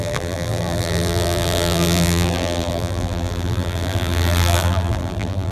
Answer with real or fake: fake